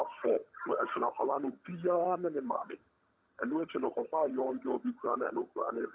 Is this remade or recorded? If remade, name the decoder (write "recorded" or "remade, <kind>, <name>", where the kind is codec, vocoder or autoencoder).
remade, vocoder, HiFi-GAN